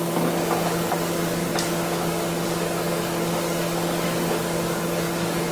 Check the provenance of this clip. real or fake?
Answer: fake